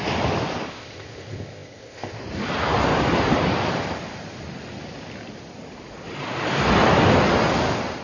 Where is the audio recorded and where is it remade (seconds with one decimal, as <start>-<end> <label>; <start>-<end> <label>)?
0.0-0.7 recorded; 0.7-2.2 remade; 2.2-8.0 recorded